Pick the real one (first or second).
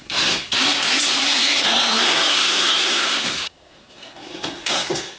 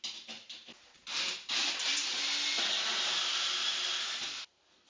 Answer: second